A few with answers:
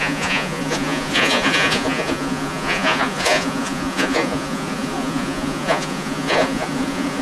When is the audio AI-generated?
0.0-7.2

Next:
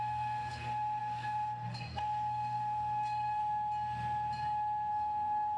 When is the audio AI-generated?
0.0-3.4; 4.9-5.6